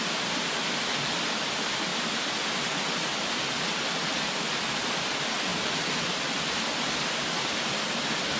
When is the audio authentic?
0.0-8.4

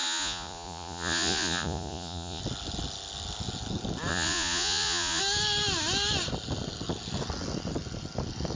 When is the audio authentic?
2.4-4.1; 5.2-8.6

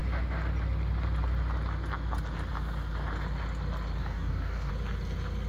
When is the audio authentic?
0.0-4.0; 4.7-5.5

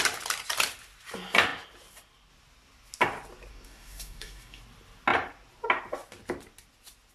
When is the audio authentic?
0.0-3.5; 4.6-7.1

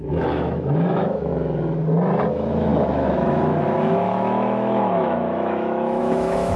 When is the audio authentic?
1.3-2.3